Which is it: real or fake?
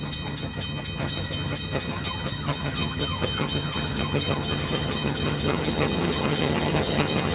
fake